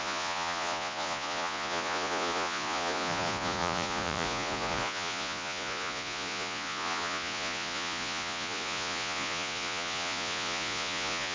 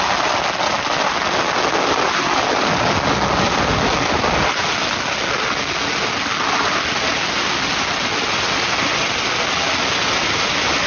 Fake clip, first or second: first